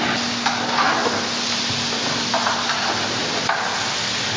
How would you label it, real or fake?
real